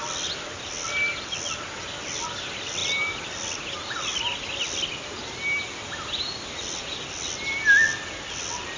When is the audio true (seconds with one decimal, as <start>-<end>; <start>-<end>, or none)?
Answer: 0.0-8.8